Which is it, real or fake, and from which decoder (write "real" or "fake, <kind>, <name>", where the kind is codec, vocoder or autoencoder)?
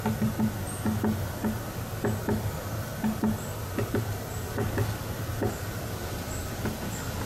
real